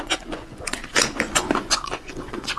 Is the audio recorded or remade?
remade